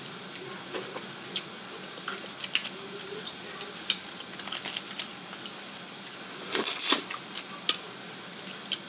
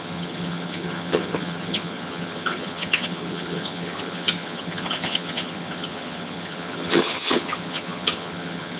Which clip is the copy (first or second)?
second